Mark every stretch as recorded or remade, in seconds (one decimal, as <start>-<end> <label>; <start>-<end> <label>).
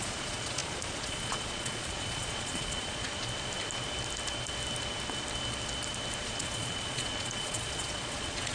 0.0-3.1 remade; 3.1-6.2 recorded; 6.2-8.5 remade